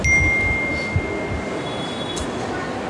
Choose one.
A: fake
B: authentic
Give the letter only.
B